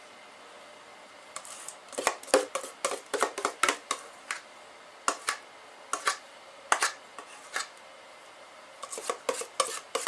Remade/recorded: recorded